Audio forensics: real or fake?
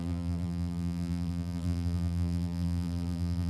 fake